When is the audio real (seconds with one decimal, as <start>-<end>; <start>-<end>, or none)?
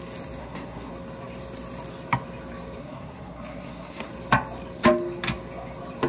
0.0-0.4; 0.9-2.8; 4.1-6.1